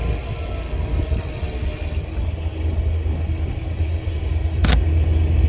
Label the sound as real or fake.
real